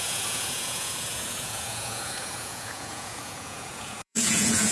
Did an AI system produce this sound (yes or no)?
yes